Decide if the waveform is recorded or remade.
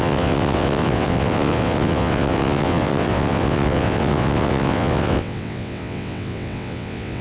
remade